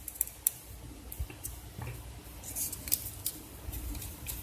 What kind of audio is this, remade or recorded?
remade